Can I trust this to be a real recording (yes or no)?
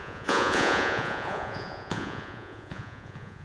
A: no